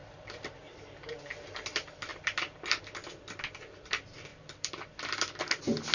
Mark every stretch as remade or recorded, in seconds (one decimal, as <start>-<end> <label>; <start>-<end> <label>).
0.0-1.1 remade; 1.1-2.1 recorded; 2.1-2.8 remade; 2.8-4.3 recorded; 4.3-5.3 remade; 5.3-5.9 recorded